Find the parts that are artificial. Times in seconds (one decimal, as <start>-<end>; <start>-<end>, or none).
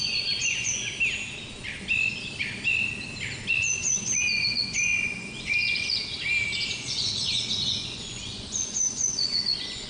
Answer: 0.0-0.9; 3.6-6.0; 6.7-9.9